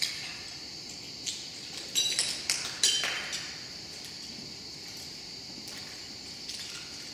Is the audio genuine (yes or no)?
yes